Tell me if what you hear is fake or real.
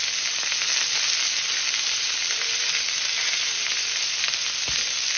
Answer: real